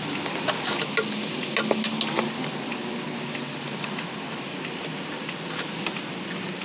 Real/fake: real